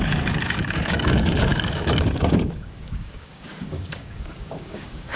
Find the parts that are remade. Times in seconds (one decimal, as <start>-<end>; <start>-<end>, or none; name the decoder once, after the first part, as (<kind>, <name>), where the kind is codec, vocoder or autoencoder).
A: 0.0-5.2 (codec, DAC)